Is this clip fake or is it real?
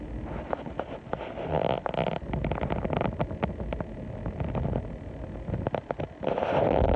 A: real